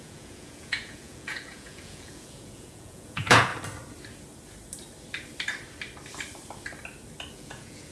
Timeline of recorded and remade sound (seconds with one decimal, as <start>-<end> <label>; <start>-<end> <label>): 0.0-3.5 remade; 3.5-7.3 recorded; 7.3-7.9 remade